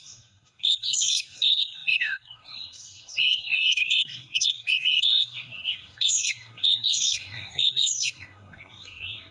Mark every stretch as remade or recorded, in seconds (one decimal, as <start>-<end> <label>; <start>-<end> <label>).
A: 0.0-9.3 remade